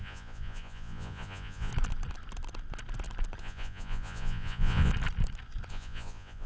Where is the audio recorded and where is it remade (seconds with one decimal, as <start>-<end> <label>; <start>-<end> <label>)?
0.0-1.7 remade; 1.7-3.4 recorded; 3.4-4.9 remade; 4.9-5.7 recorded; 5.7-6.5 remade